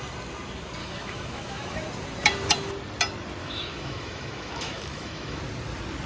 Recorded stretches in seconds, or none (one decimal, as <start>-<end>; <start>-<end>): 0.0-0.8; 1.8-3.4; 5.4-6.1